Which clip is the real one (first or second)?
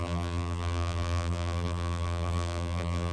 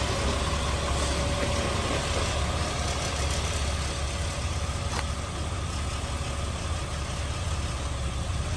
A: second